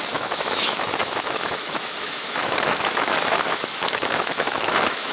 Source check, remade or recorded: remade